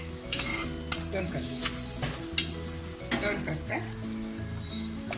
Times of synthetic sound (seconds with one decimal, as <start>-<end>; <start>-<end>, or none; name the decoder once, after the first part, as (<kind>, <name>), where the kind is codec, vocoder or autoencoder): 0.0-0.5 (autoencoder, DAC-VAE); 1.2-1.6; 4.7-5.2